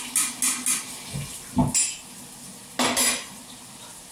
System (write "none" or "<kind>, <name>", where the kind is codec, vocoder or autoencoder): none